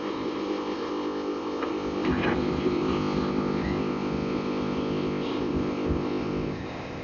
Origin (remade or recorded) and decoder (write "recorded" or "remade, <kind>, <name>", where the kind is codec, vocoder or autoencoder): remade, codec, ZipCodec